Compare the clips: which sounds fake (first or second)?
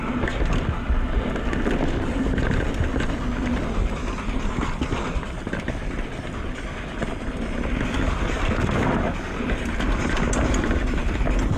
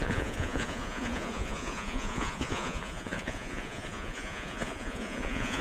second